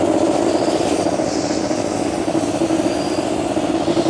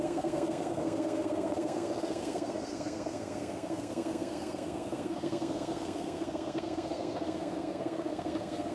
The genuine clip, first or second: first